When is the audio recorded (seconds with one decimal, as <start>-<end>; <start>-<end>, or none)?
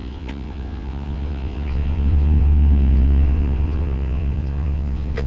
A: none